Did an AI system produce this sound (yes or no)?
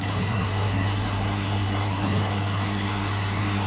yes